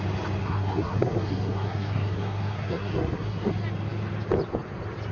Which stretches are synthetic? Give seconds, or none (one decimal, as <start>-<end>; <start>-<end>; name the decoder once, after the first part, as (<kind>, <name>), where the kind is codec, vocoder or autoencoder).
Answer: 0.4-3.5 (codec, SNAC)